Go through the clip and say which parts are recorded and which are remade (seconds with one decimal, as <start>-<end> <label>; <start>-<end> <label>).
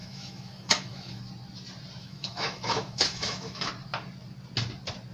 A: 0.0-1.2 remade; 1.2-2.0 recorded; 2.0-3.7 remade; 3.7-5.1 recorded